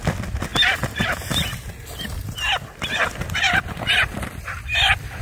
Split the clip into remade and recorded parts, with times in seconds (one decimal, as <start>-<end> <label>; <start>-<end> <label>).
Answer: 0.0-5.2 recorded

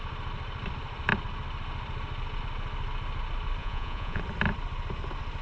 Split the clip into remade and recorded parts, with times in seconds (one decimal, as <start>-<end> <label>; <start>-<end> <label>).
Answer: 0.0-3.6 recorded; 3.6-4.2 remade; 4.2-5.4 recorded

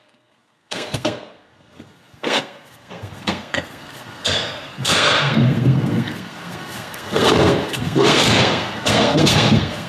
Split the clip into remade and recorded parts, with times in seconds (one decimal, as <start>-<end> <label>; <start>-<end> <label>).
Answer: 0.0-9.9 remade

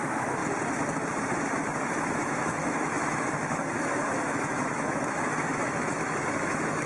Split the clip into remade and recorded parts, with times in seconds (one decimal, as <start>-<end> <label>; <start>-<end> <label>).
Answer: 0.0-0.4 remade; 0.4-1.2 recorded; 1.2-6.9 remade

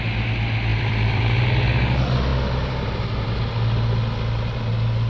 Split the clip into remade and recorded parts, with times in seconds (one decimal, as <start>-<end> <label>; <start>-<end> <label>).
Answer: 0.0-0.7 recorded; 0.7-1.4 remade; 1.4-5.1 recorded

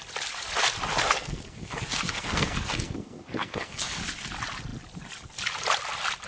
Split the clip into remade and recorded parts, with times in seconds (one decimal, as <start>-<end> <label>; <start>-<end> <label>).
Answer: 0.0-0.9 recorded; 0.9-4.0 remade; 4.0-6.3 recorded